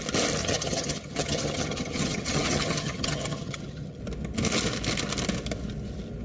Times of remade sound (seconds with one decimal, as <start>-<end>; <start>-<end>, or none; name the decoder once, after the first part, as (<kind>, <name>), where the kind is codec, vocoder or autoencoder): 0.4-4.0 (vocoder, HiFi-GAN)